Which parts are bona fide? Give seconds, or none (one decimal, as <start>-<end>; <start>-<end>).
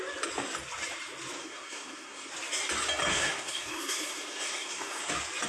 0.0-1.4; 2.3-3.1; 5.1-5.5